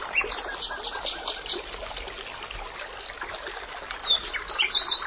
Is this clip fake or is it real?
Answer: real